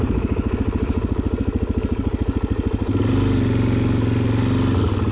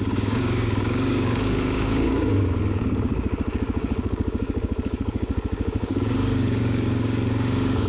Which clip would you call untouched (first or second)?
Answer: first